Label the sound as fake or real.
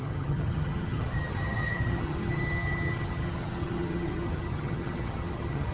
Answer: fake